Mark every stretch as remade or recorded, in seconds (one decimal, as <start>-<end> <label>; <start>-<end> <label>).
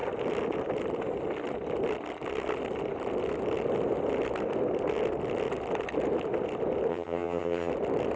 0.0-6.9 recorded; 6.9-7.7 remade; 7.7-8.2 recorded